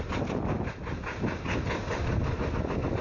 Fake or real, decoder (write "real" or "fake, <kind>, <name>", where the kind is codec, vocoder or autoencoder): real